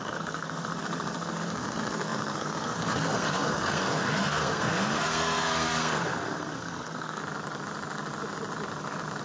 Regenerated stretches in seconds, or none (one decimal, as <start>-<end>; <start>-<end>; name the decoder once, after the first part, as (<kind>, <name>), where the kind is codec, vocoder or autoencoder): 0.0-7.2 (codec, SNAC)